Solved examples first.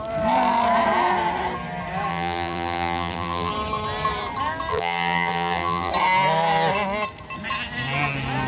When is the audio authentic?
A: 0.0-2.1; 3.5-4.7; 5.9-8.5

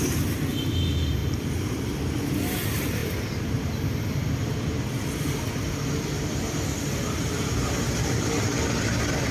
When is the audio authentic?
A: 0.0-1.2; 2.3-9.3

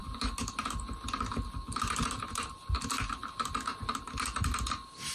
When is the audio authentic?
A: 0.0-5.1

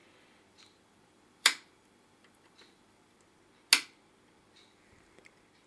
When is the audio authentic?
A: 3.4-5.7

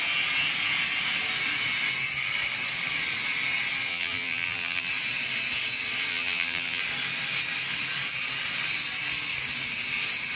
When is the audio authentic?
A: 0.0-3.9; 4.9-6.1; 6.8-10.4